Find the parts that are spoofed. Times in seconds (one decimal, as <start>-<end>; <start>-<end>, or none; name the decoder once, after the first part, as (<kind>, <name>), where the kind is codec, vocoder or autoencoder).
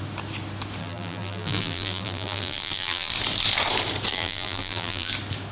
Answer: 0.8-3.1 (vocoder, BigVGAN v2); 4.1-5.1